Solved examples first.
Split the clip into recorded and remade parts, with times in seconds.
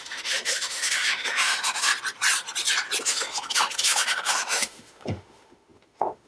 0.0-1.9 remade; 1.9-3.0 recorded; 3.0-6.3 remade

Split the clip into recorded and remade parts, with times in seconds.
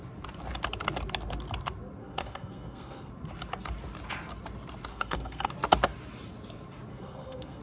0.0-2.0 recorded; 2.0-3.1 remade; 3.1-4.9 recorded; 4.9-5.5 remade; 5.5-6.9 recorded; 6.9-7.6 remade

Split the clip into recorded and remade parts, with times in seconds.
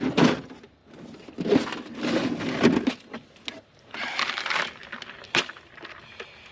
0.0-6.5 recorded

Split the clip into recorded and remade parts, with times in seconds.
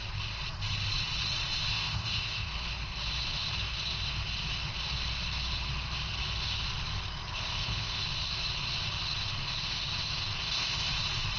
0.0-1.7 recorded; 1.7-2.5 remade; 2.5-7.3 recorded; 7.3-8.0 remade; 8.0-10.4 recorded; 10.4-10.9 remade; 10.9-11.4 recorded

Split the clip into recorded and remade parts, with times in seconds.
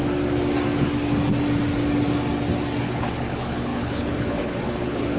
0.0-2.8 recorded; 2.8-5.2 remade